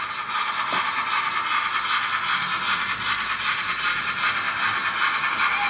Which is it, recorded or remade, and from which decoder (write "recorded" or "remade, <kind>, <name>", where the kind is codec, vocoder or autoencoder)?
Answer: recorded